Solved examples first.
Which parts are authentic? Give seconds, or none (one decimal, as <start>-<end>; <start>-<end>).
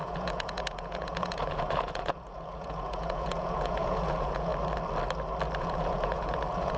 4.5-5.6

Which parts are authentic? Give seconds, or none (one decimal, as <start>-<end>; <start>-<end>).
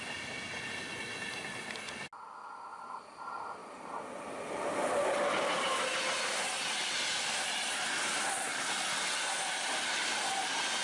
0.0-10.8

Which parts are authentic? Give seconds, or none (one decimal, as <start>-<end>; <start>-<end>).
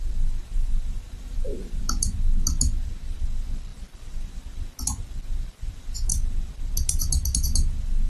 0.0-0.4; 1.8-8.1